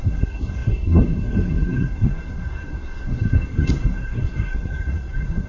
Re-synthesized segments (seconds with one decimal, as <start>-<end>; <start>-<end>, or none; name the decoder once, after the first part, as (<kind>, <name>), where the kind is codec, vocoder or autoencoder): 0.0-5.5 (codec, SNAC)